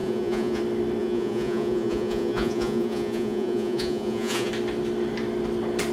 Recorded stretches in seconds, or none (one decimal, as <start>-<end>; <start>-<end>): 0.6-1.0; 4.5-5.9